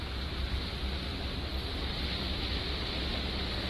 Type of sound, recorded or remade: recorded